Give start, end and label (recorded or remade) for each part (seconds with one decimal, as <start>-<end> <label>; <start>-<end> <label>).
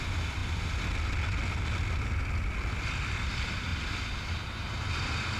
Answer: 0.0-5.4 recorded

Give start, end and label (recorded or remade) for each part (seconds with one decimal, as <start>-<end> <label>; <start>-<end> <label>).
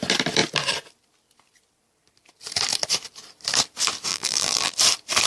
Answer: 0.0-4.1 recorded; 4.1-4.7 remade; 4.7-5.3 recorded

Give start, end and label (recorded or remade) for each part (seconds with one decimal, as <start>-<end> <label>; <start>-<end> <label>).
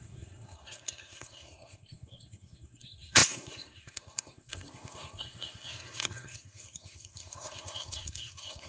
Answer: 0.0-8.7 remade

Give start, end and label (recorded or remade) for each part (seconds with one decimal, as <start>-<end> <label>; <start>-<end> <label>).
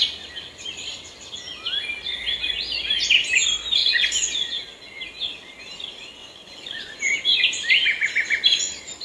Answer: 0.0-6.2 recorded; 6.2-7.0 remade; 7.0-9.0 recorded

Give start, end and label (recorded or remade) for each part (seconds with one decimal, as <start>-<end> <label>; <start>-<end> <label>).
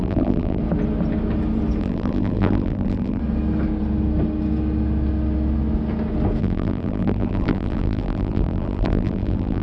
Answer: 0.0-0.6 remade; 0.6-1.8 recorded; 1.8-3.2 remade; 3.2-6.4 recorded; 6.4-9.6 remade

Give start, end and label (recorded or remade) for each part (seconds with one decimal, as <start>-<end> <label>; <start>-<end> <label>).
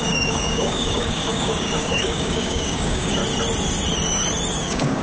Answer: 0.0-3.2 remade; 3.2-4.6 recorded; 4.6-5.0 remade